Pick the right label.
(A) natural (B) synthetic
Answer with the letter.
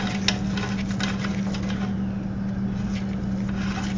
A